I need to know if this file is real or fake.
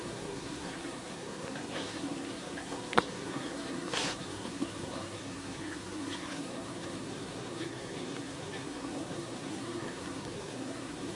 fake